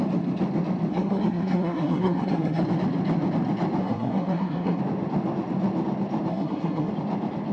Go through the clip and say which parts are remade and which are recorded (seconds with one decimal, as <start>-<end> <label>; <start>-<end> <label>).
0.0-0.9 recorded; 0.9-2.6 remade; 2.6-3.8 recorded; 3.8-4.8 remade; 4.8-6.3 recorded; 6.3-6.9 remade; 6.9-7.5 recorded